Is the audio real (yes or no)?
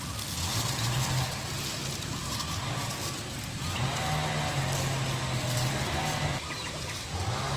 yes